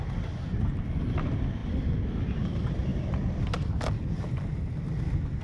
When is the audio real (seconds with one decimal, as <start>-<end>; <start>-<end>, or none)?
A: 0.0-5.4